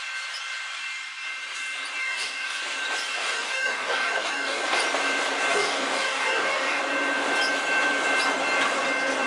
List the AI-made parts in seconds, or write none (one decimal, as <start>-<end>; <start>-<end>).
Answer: 2.0-2.6; 3.1-4.8; 5.5-6.8